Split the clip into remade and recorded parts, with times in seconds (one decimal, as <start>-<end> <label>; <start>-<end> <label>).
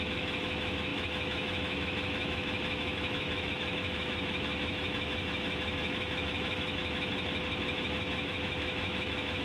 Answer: 0.0-6.8 remade; 6.8-7.7 recorded; 7.7-9.4 remade